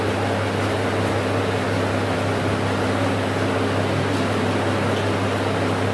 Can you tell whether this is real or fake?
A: real